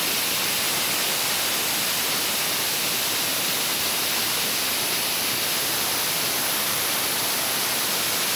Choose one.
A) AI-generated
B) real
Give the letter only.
B